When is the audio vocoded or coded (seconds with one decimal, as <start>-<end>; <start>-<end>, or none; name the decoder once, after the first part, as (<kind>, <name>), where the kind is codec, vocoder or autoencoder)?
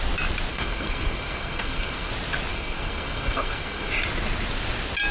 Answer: 0.5-2.1 (codec, SNAC); 2.5-3.9